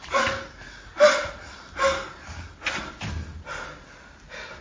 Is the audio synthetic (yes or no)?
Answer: no